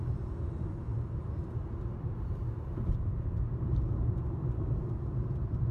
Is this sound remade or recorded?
recorded